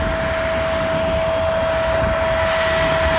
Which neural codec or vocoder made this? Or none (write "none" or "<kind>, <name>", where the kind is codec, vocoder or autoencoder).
none